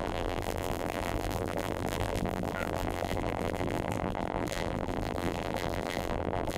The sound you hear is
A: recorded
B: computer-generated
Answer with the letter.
B